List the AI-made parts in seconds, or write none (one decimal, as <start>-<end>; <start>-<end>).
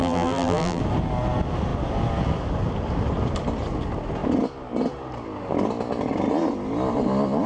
0.0-0.8